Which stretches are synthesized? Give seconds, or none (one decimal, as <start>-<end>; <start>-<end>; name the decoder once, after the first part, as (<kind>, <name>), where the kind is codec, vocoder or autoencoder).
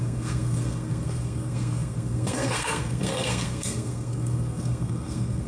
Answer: 0.0-5.5 (codec, SNAC)